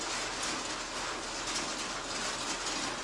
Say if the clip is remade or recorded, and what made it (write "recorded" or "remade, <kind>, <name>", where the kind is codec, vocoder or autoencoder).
recorded